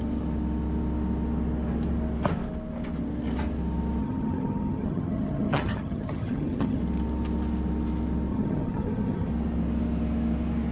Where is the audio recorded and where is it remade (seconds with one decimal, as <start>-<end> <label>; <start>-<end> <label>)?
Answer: 0.0-4.0 recorded; 4.0-6.8 remade; 6.8-8.3 recorded; 8.3-9.3 remade; 9.3-10.7 recorded